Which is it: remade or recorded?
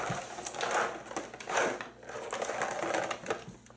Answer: recorded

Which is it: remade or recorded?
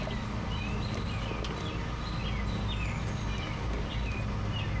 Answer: recorded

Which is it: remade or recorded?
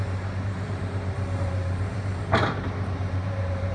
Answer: remade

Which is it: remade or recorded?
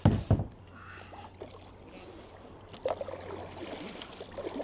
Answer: recorded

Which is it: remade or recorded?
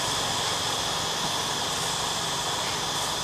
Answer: recorded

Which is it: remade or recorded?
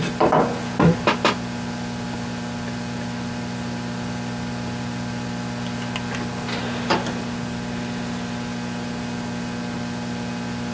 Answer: recorded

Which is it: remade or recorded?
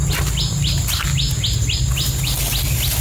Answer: recorded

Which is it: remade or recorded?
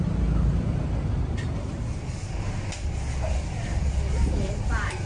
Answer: recorded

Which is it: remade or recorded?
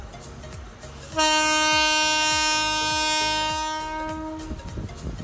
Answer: recorded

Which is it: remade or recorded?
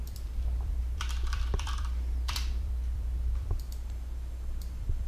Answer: remade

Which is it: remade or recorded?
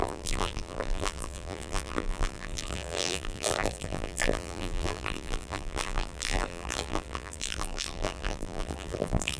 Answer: remade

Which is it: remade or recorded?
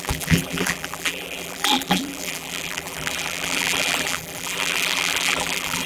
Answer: remade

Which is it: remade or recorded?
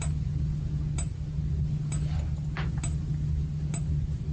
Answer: recorded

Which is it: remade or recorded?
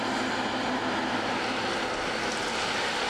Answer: recorded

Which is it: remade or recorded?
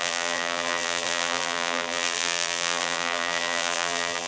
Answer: remade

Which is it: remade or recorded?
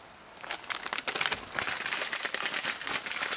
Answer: recorded